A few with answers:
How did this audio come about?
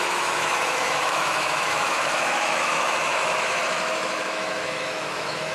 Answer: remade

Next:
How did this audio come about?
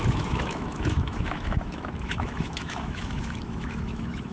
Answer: remade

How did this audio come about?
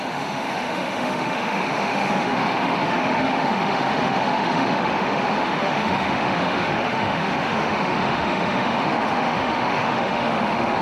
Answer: remade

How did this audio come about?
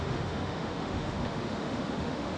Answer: remade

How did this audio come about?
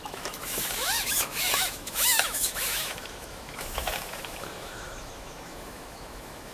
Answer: remade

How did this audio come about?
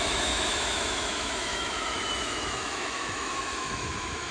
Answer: remade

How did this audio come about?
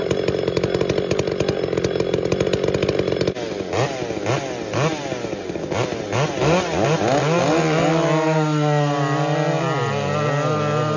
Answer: recorded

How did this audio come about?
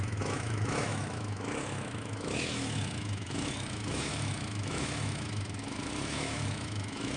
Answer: remade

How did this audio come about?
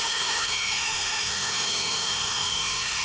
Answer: remade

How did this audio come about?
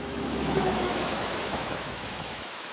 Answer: remade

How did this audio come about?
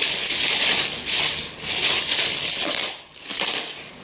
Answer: recorded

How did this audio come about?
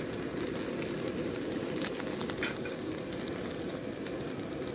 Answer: recorded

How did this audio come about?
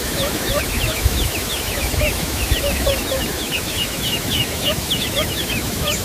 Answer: remade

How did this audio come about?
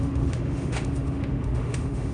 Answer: remade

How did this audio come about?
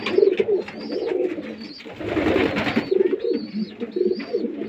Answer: recorded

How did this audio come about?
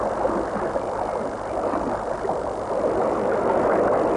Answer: recorded